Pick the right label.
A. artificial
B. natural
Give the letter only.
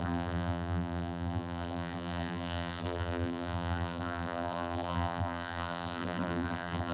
A